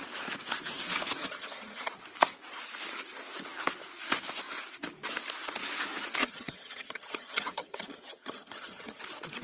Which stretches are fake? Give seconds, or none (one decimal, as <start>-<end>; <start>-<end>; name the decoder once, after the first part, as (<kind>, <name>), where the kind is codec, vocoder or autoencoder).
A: 1.2-1.9 (vocoder, HiFi-GAN); 6.2-9.0